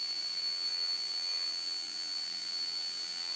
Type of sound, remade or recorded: remade